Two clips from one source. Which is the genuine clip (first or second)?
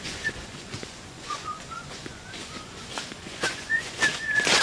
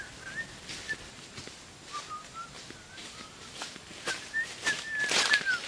second